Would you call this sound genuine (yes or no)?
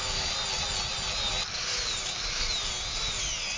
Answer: yes